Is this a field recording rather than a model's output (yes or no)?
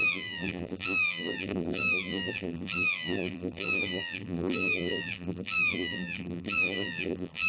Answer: no